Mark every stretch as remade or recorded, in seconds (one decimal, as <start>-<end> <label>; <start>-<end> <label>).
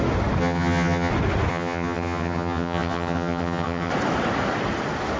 0.0-0.4 recorded; 0.4-1.1 remade; 1.1-1.5 recorded; 1.5-3.9 remade; 3.9-5.2 recorded